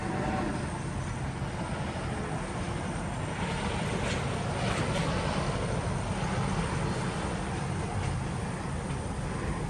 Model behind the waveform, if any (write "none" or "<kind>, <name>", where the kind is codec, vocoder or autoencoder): none